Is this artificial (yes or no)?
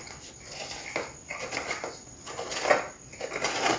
no